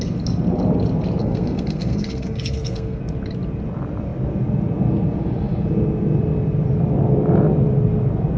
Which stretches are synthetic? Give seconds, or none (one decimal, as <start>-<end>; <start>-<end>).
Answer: 1.2-3.0